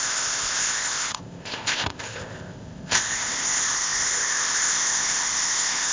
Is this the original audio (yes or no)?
no